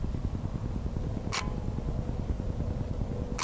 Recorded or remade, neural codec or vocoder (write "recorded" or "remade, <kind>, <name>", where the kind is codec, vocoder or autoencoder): recorded